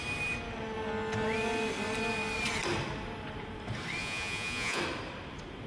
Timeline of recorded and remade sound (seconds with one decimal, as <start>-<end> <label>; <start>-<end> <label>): 0.0-4.0 recorded; 4.0-4.8 remade; 4.8-5.7 recorded